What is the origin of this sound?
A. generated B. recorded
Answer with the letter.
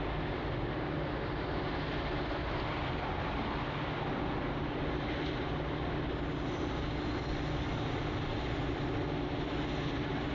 B